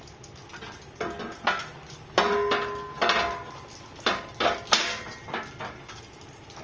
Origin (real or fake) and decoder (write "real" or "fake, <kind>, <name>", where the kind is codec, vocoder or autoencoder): real